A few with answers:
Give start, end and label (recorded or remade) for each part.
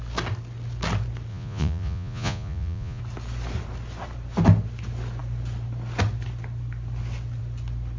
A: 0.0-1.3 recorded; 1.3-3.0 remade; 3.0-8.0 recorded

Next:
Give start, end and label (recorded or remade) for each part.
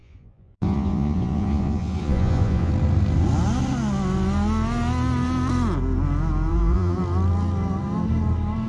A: 0.0-2.7 remade; 2.7-6.5 recorded; 6.5-7.0 remade; 7.0-8.7 recorded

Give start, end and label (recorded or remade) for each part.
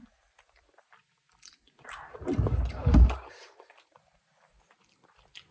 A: 0.0-2.8 recorded; 2.8-4.0 remade; 4.0-5.5 recorded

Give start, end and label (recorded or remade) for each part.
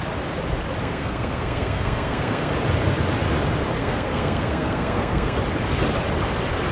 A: 0.0-0.8 recorded; 0.8-2.5 remade; 2.5-3.8 recorded; 3.8-5.4 remade; 5.4-6.7 recorded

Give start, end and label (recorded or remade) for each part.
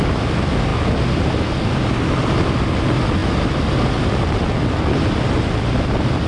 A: 0.0-6.3 recorded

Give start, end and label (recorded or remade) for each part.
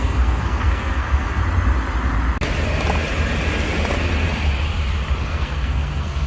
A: 0.0-1.4 remade; 1.4-5.2 recorded; 5.2-6.3 remade